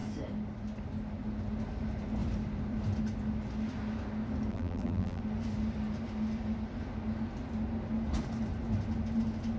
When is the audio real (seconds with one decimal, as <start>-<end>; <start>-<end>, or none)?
0.0-4.5; 5.2-9.6